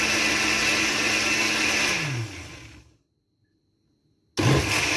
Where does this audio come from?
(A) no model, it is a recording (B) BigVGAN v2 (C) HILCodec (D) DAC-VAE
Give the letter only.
A